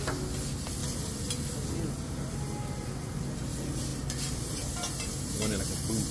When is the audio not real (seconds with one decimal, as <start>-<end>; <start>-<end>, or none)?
none